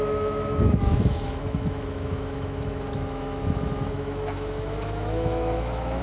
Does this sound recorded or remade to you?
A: remade